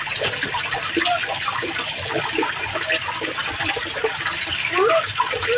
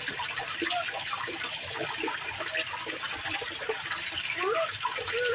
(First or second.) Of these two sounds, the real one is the second